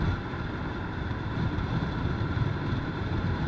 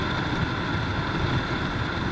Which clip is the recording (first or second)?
second